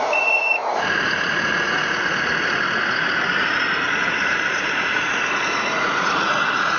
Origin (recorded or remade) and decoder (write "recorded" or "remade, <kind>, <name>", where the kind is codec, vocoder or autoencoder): remade, vocoder, Vocos